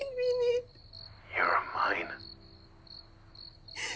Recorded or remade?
recorded